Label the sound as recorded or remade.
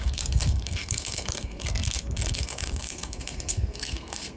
remade